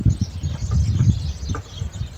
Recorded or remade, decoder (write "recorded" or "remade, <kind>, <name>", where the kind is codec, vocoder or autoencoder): recorded